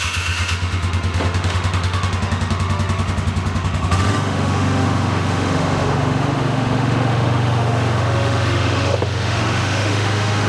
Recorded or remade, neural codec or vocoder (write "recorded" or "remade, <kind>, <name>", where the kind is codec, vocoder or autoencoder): remade, autoencoder, DAC-VAE